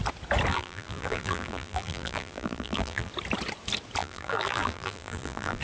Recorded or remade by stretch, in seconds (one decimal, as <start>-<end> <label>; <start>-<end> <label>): 0.0-0.5 recorded; 0.5-3.1 remade; 3.1-4.0 recorded; 4.0-5.6 remade

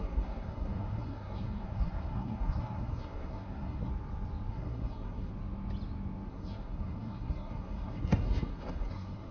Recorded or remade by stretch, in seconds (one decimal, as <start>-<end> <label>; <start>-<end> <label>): 0.0-3.9 remade; 3.9-4.5 recorded; 4.5-5.3 remade; 5.3-6.3 recorded; 6.3-9.3 remade

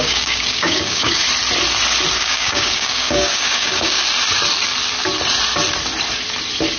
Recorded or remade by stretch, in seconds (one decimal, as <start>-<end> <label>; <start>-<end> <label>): 0.0-1.2 remade; 1.2-2.2 recorded; 2.2-4.0 remade; 4.0-6.8 recorded

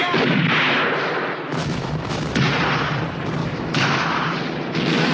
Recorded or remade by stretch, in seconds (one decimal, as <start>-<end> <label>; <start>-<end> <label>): 0.0-1.5 recorded; 1.5-2.2 remade; 2.2-3.4 recorded; 3.4-4.2 remade; 4.2-5.1 recorded

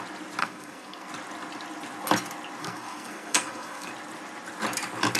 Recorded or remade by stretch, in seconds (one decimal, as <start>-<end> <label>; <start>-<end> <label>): 0.0-0.4 recorded; 0.4-1.1 remade; 1.1-2.6 recorded; 2.6-3.9 remade; 3.9-5.2 recorded

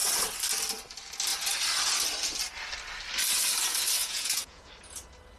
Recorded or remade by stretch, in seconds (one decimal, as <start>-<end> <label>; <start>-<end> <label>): 0.0-4.0 recorded; 4.0-4.7 remade; 4.7-5.4 recorded